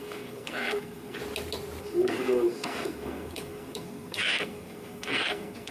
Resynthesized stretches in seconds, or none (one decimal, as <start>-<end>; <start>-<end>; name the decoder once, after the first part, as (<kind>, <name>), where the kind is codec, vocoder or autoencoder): 0.0-1.2 (codec, SNAC); 1.8-5.7